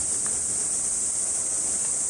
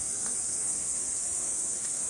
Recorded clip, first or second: first